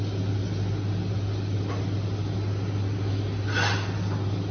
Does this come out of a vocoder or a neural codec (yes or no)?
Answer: no